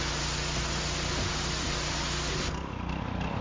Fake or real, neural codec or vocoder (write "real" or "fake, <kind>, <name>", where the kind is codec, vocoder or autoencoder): real